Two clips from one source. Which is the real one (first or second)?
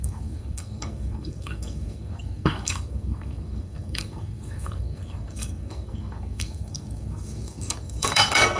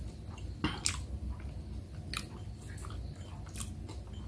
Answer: second